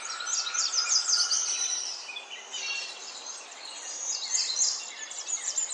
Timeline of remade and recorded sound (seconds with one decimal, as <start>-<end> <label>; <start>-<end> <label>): 0.0-1.4 recorded; 1.4-4.8 remade; 4.8-5.7 recorded